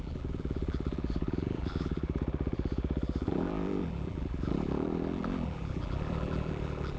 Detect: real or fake fake